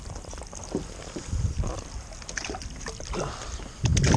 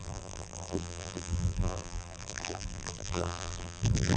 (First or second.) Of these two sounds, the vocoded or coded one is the second